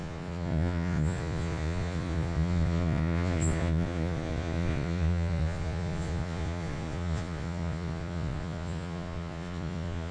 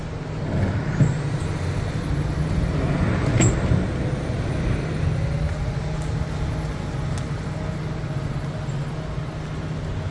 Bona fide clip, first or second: second